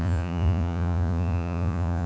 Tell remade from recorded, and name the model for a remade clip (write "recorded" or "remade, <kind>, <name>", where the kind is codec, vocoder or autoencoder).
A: remade, vocoder, Vocos